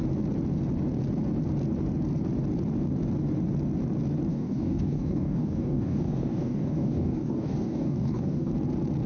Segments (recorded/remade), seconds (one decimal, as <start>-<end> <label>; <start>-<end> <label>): 0.0-4.3 recorded; 4.3-8.5 remade; 8.5-9.1 recorded